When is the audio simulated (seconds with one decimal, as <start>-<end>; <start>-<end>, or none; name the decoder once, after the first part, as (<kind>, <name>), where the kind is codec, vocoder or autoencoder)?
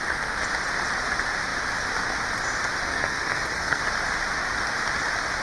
2.8-3.8 (codec, SNAC)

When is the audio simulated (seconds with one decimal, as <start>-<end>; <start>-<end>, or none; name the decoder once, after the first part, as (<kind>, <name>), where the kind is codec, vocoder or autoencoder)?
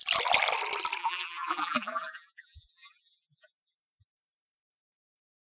1.0-4.3 (vocoder, BigVGAN v2)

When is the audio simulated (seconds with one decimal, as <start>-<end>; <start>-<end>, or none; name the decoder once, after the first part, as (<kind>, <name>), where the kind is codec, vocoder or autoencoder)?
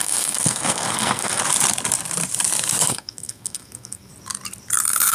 0.0-1.4 (codec, SNAC); 2.9-4.1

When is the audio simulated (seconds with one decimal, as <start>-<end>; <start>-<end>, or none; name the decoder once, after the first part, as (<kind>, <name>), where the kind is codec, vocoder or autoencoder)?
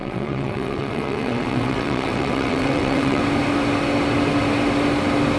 0.0-3.2 (vocoder, WaveNeXt)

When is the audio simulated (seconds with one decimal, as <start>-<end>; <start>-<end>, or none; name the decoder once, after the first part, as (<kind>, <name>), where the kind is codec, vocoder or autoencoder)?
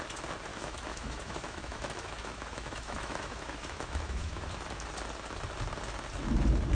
0.5-4.5 (autoencoder, DAC-VAE)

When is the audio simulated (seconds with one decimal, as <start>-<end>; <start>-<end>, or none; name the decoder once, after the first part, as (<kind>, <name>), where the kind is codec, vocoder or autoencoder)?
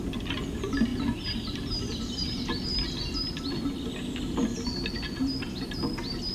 none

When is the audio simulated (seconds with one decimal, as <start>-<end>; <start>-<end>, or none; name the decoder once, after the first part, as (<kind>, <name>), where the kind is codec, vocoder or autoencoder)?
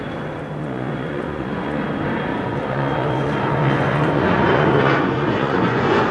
0.6-1.8 (vocoder, Vocos); 2.3-6.1